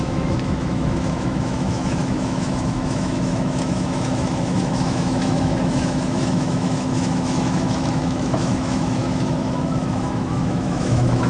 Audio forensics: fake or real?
fake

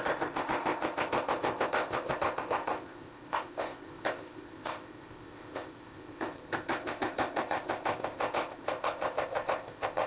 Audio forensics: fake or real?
fake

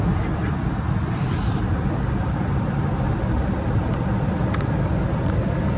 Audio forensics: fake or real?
real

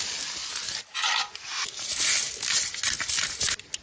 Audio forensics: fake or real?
real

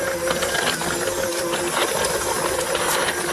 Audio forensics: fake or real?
real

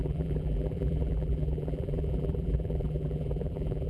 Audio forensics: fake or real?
fake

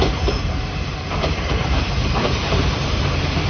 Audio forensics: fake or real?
fake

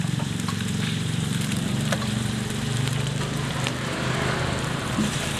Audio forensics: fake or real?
fake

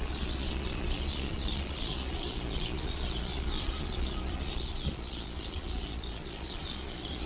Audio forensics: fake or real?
fake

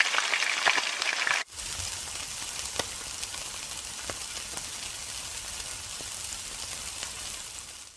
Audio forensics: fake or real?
real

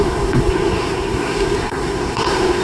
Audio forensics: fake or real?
fake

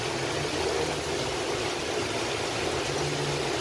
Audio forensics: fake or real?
real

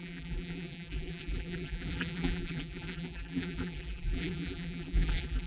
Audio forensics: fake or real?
fake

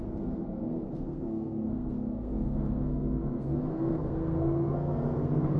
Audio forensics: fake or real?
fake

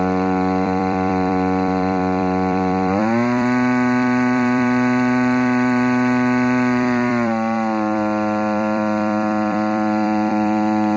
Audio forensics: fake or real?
fake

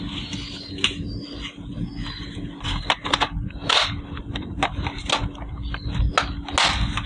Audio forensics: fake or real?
real